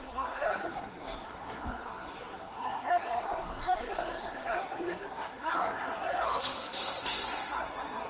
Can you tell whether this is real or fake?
fake